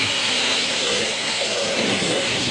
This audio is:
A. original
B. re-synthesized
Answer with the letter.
B